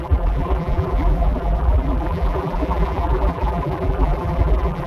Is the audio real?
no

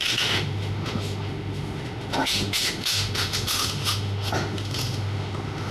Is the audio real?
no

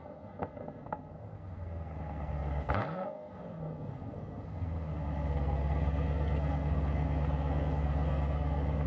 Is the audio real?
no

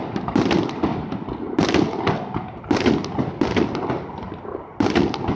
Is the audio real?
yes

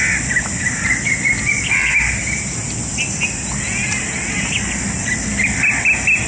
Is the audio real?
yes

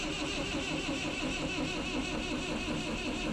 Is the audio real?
yes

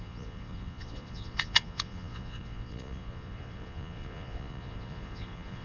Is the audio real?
no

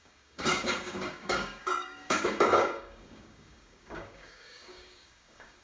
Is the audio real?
no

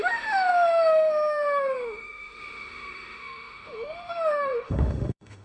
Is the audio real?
no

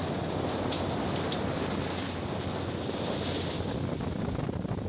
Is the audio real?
yes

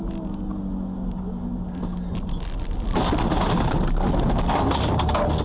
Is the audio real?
yes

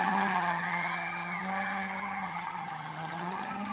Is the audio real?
no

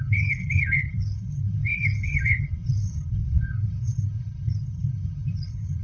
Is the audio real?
no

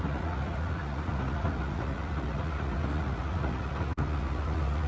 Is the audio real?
no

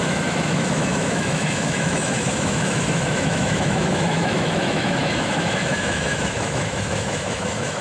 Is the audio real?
no